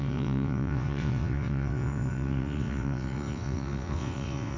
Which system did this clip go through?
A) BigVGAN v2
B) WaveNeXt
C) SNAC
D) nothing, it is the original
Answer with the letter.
B